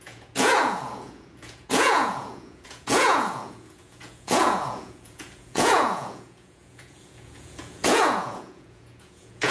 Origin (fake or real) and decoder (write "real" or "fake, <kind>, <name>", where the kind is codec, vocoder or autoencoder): fake, vocoder, Vocos